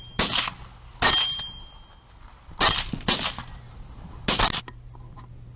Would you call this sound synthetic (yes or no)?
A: no